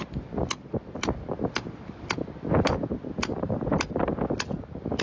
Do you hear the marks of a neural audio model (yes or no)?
no